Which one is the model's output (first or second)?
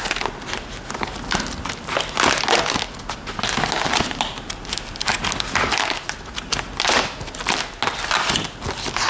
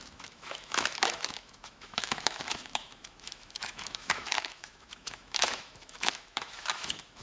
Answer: second